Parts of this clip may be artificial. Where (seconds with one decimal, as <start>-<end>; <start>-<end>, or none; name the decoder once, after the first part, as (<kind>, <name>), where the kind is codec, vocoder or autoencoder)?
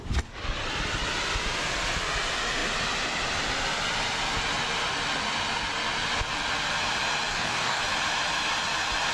7.3-7.8 (codec, DAC)